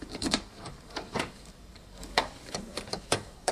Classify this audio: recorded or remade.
remade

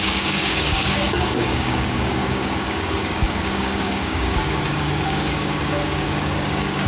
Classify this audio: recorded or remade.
remade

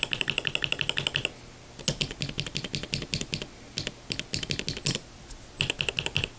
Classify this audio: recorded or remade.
recorded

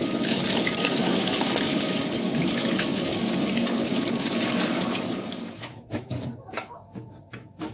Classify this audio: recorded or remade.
remade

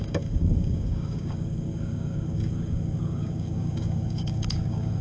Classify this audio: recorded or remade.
remade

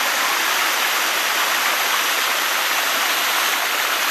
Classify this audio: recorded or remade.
recorded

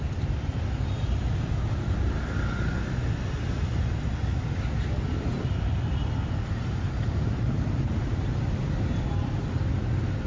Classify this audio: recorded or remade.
recorded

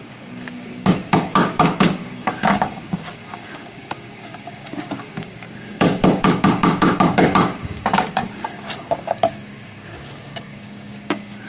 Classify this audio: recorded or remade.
remade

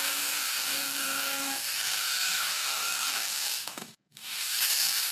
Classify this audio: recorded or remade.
remade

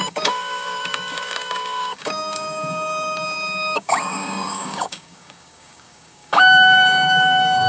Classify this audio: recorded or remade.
remade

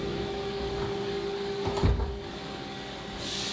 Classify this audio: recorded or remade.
remade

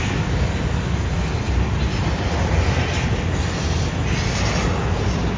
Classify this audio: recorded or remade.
recorded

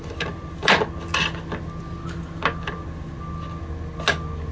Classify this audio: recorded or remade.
recorded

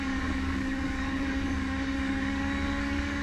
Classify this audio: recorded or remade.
remade